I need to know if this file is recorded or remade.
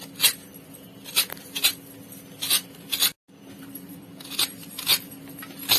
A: recorded